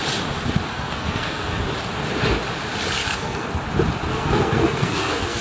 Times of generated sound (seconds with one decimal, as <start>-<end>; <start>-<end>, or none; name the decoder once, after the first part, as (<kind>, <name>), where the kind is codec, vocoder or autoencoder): 0.7-1.6 (codec, SNAC); 3.0-3.5; 4.1-5.4